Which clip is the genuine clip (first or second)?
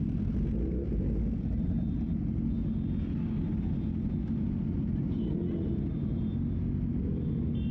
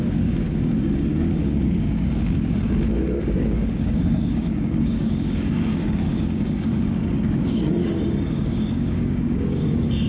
first